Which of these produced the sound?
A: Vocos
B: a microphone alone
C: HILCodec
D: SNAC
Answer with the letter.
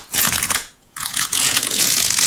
A